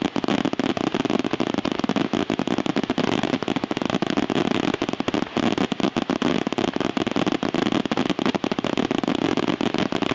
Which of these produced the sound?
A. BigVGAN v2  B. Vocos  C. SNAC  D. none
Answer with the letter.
D